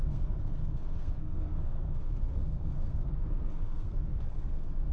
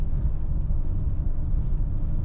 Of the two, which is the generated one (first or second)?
first